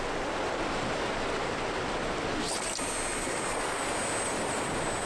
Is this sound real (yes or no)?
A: yes